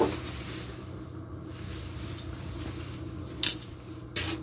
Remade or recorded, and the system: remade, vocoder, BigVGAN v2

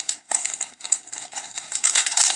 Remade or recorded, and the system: remade, codec, SNAC